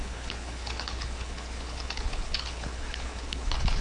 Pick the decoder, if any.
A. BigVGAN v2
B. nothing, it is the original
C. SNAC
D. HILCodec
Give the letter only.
D